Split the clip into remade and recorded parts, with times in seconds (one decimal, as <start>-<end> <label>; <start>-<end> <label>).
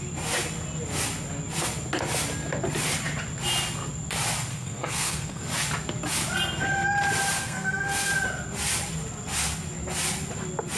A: 0.0-4.5 recorded; 4.5-5.4 remade; 5.4-7.4 recorded; 7.4-8.1 remade; 8.1-10.8 recorded